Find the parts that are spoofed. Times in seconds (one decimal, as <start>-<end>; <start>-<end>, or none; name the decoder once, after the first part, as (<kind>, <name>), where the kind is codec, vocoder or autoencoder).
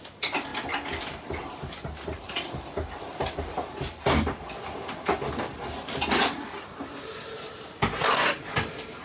none